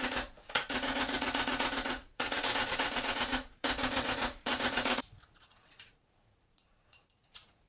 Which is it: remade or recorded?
remade